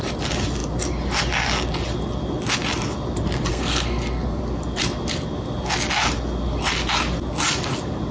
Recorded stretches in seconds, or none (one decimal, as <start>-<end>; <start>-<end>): 0.0-3.5; 4.4-8.1

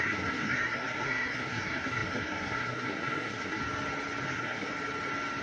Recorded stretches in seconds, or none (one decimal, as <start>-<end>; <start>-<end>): 3.6-4.3; 4.7-5.4

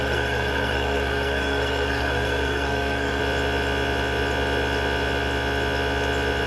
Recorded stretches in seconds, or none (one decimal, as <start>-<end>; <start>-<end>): 3.2-6.5

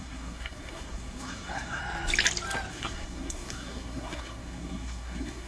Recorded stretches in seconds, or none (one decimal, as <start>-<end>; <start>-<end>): 1.8-2.7

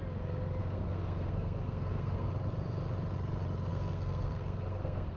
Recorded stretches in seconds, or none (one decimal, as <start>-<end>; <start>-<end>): 0.0-0.6; 2.3-3.7

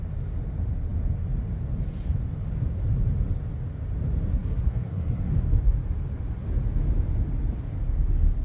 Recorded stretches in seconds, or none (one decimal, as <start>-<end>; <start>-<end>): 0.0-4.3; 5.3-8.4

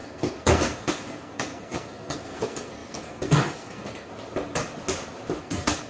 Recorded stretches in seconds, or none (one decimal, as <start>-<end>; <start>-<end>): 4.1-5.4